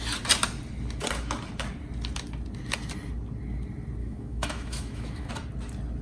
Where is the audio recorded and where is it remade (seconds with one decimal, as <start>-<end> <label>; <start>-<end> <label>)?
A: 0.0-4.0 recorded; 4.0-5.3 remade; 5.3-6.0 recorded